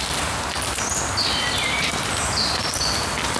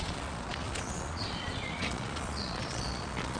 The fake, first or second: second